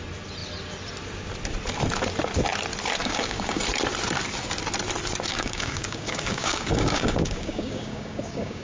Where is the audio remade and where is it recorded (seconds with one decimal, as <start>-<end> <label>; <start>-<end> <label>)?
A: 0.0-3.0 recorded; 3.0-3.6 remade; 3.6-5.3 recorded; 5.3-8.6 remade